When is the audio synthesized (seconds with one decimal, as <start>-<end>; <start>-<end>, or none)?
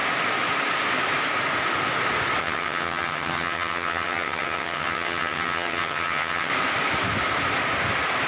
2.4-6.5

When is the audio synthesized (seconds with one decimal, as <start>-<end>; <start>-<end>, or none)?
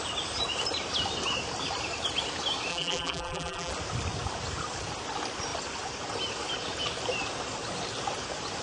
2.7-3.7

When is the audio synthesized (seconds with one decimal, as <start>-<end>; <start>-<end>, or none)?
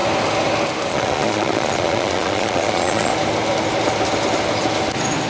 0.9-3.1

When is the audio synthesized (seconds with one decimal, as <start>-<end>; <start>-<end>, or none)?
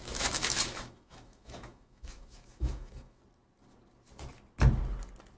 0.0-3.2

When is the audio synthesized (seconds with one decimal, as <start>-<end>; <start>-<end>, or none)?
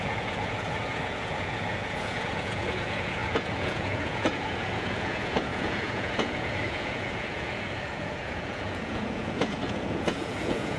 0.0-10.8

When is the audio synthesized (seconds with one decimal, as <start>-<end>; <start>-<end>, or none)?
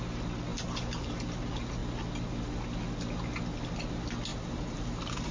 0.5-1.1; 4.3-5.3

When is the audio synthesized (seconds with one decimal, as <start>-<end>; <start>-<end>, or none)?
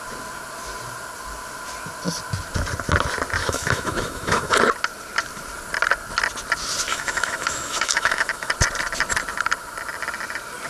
3.4-4.6; 6.9-8.5